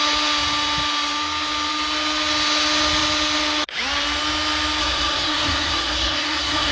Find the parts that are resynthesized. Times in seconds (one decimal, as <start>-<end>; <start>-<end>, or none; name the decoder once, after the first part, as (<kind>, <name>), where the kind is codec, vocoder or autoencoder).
4.8-6.7 (codec, SNAC)